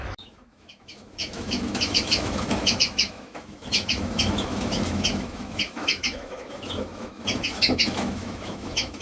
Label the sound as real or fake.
fake